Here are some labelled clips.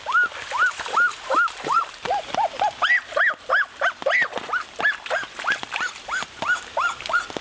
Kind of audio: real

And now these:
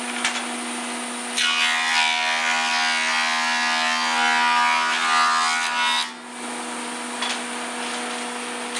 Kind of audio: real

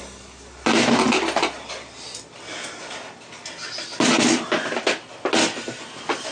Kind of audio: real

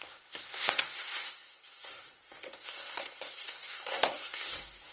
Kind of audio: fake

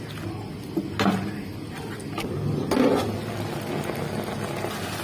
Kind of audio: real